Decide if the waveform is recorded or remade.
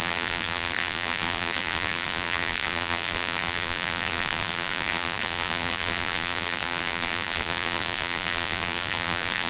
remade